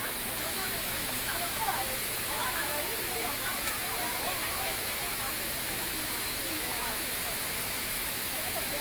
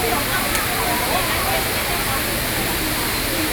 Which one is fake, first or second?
first